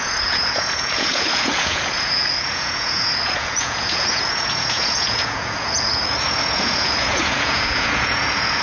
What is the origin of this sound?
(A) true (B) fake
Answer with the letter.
B